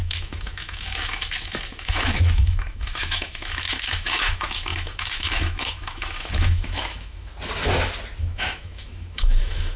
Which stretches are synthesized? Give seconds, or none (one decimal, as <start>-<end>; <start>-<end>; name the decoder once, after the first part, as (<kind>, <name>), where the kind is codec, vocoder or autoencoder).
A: 0.0-7.3 (autoencoder, DAC-VAE); 8.2-9.8